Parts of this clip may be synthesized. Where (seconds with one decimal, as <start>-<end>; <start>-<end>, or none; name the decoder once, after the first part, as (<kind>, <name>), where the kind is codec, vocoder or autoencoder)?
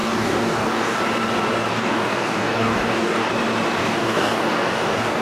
0.0-1.0 (codec, DAC); 1.7-3.3; 3.8-5.2